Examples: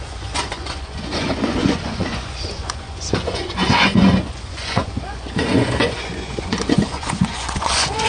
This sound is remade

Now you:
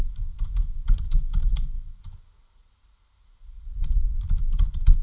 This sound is recorded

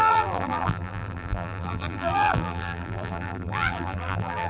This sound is remade